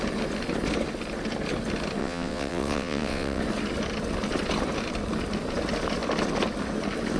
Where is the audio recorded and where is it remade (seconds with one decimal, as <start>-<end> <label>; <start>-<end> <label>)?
0.0-2.0 recorded; 2.0-3.4 remade; 3.4-7.2 recorded